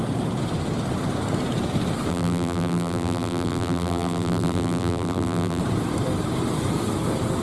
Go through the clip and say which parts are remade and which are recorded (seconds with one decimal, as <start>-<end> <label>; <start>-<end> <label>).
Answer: 0.0-2.1 recorded; 2.1-5.6 remade; 5.6-7.4 recorded